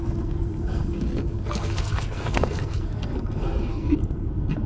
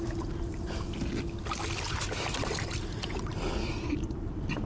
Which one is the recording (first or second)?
second